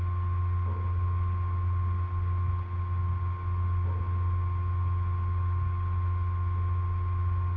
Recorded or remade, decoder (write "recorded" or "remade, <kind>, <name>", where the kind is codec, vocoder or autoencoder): recorded